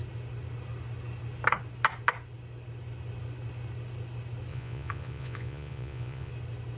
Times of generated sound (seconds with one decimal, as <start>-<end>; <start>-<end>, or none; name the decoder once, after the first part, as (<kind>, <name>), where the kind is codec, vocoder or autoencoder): 4.5-6.3 (vocoder, Vocos)